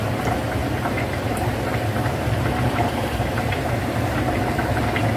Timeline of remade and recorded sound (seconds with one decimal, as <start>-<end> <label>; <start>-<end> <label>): 0.0-5.2 remade